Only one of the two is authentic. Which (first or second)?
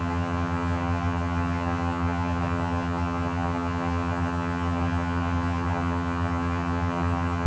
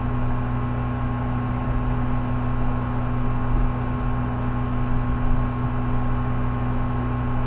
second